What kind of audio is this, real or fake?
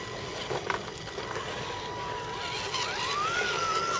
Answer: real